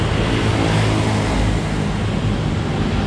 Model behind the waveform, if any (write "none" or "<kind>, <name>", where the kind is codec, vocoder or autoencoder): none